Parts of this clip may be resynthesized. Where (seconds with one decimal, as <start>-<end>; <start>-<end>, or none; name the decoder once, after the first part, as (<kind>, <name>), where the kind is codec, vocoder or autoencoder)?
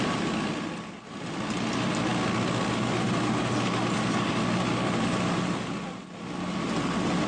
none